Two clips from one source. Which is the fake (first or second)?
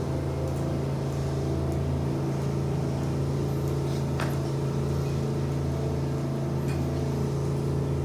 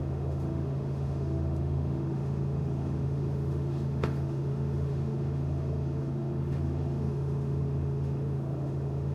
second